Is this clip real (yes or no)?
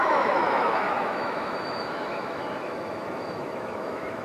no